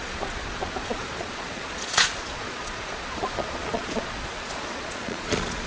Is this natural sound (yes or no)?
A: no